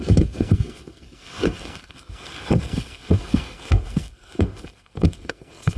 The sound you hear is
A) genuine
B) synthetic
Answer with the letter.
B